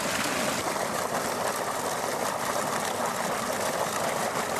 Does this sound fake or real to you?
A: real